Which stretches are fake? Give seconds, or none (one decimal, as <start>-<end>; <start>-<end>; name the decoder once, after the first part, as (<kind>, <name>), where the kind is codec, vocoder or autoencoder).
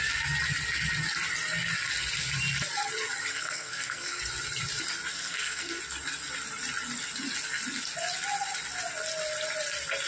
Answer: 3.3-4.2 (codec, SNAC); 5.1-5.8